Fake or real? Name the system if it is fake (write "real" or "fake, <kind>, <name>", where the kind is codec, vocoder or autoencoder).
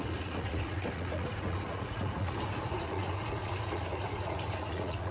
fake, vocoder, Vocos